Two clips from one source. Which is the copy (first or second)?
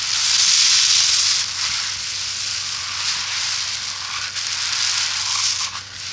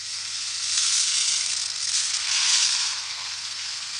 second